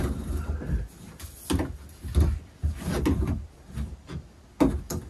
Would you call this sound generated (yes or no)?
no